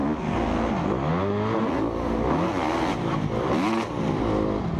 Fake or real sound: real